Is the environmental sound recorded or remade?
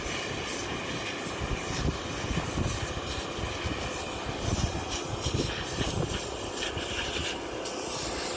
recorded